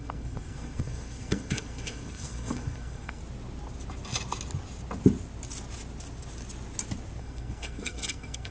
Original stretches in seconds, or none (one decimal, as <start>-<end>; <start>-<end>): 3.2-7.2